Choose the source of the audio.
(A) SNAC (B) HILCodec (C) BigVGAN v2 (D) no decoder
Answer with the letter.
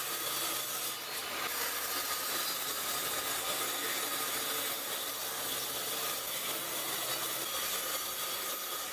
D